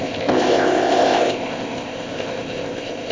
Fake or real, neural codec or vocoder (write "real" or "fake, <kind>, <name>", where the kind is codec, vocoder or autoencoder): fake, codec, ZipCodec